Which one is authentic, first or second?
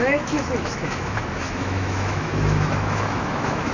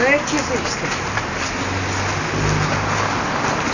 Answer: second